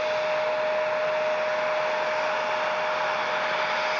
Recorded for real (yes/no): yes